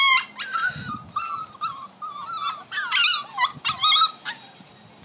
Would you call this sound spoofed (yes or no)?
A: no